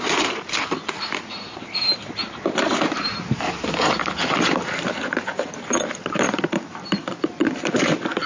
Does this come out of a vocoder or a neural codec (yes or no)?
yes